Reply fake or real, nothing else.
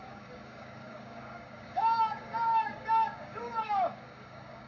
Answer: fake